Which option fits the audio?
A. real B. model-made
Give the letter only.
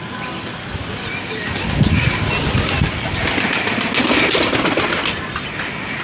A